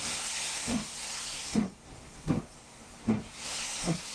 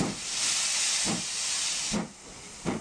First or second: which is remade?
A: first